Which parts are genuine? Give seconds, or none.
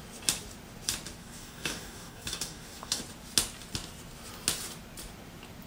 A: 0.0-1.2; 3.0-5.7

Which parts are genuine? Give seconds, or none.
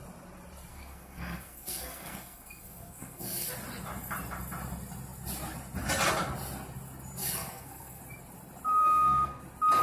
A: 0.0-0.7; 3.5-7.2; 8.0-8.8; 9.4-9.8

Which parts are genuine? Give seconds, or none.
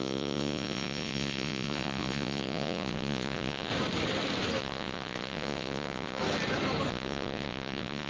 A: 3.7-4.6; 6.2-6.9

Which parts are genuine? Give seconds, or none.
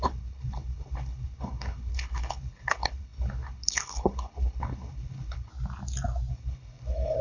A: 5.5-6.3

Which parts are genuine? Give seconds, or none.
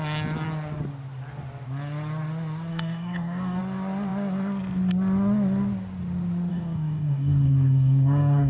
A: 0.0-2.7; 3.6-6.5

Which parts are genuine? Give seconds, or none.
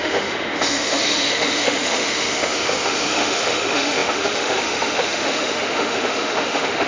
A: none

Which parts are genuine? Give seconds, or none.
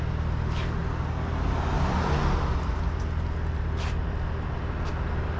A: 0.0-5.4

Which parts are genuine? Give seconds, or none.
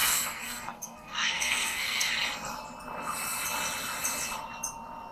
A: 2.1-5.1